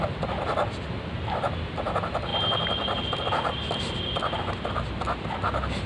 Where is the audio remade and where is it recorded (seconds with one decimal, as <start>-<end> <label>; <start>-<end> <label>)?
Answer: 0.0-5.9 recorded